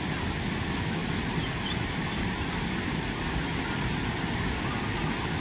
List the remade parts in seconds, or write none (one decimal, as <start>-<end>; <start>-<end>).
none